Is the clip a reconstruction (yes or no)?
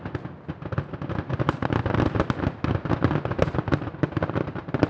no